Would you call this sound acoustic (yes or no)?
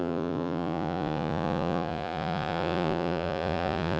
no